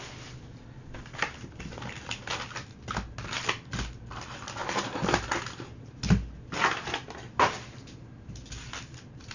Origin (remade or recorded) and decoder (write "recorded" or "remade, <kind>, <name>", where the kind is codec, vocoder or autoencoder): recorded